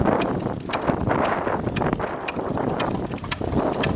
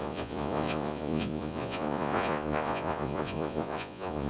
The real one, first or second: first